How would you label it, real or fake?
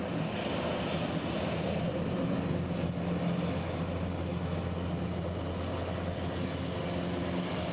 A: real